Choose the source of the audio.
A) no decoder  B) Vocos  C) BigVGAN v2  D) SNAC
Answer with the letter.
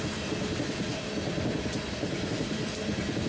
A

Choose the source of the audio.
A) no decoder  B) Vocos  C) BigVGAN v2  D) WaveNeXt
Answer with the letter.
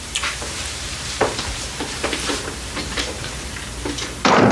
C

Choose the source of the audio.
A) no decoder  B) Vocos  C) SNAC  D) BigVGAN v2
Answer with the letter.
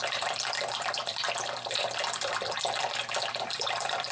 D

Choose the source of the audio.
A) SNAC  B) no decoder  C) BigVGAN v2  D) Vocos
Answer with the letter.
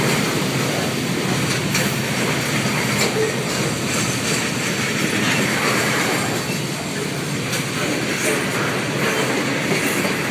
B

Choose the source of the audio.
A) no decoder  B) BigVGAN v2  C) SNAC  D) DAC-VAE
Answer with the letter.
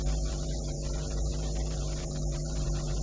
B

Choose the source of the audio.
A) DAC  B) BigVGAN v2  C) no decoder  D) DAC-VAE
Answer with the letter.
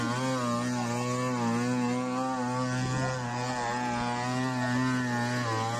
C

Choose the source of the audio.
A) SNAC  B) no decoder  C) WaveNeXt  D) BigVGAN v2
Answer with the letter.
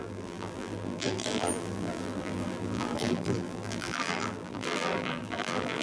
D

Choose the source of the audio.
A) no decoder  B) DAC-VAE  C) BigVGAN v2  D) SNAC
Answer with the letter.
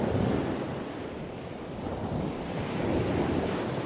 A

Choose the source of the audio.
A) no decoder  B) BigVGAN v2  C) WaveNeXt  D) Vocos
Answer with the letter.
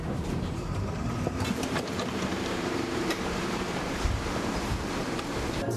B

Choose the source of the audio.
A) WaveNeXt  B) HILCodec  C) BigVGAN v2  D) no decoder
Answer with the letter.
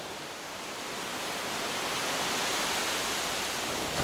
D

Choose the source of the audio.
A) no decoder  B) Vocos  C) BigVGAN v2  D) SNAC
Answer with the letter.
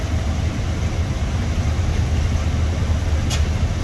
A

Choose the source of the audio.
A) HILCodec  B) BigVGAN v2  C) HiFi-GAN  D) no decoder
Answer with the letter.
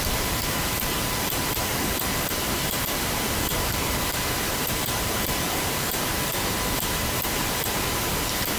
B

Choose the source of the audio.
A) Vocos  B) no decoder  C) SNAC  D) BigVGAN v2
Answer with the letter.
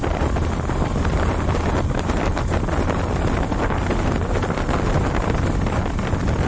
B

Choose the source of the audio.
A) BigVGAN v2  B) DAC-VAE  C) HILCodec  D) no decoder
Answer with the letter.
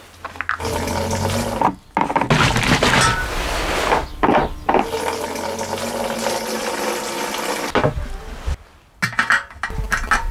D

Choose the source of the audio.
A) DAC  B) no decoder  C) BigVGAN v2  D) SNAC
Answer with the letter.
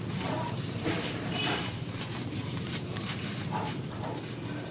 C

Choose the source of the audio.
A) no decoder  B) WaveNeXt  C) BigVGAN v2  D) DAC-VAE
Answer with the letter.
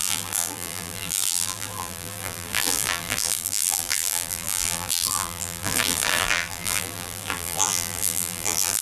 C